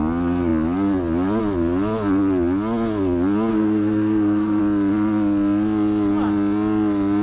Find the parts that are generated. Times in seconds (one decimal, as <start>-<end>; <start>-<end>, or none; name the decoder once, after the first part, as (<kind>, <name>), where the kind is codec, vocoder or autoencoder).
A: 3.5-4.6 (codec, SNAC)

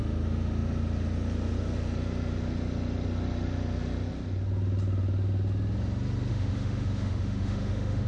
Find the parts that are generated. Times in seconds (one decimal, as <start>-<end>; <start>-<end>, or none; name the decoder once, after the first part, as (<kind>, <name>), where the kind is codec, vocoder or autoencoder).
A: 6.3-8.1 (autoencoder, DAC-VAE)